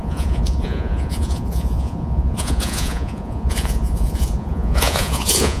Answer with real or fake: fake